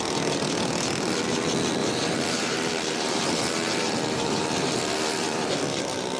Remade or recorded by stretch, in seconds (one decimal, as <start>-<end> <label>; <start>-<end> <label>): 0.0-1.8 recorded; 1.8-5.5 remade; 5.5-6.2 recorded